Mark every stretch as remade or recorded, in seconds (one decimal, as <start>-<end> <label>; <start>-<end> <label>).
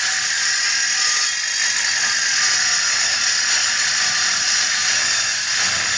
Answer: 0.0-3.6 recorded; 3.6-5.0 remade; 5.0-6.0 recorded